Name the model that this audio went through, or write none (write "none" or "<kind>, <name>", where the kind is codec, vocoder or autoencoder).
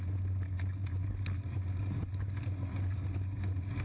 none